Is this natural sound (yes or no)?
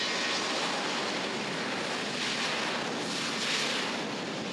yes